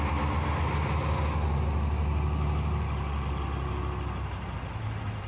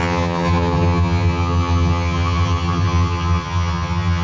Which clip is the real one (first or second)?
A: first